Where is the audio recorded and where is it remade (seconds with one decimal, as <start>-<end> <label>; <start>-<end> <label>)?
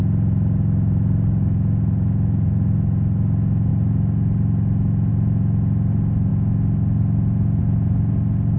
0.0-8.6 recorded